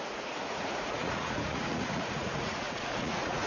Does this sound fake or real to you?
fake